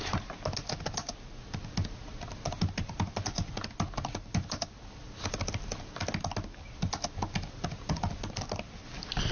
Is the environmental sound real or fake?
real